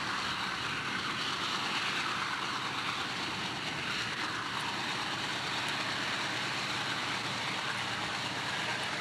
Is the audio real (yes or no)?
yes